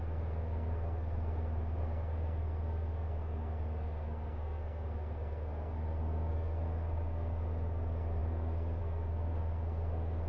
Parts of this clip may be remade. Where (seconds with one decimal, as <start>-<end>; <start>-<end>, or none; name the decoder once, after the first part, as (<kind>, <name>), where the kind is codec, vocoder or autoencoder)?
0.0-10.3 (codec, SNAC)